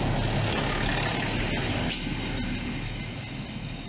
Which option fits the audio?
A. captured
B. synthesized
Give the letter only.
A